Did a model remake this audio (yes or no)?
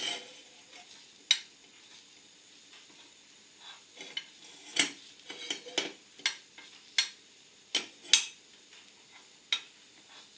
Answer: no